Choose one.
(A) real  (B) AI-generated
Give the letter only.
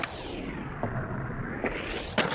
A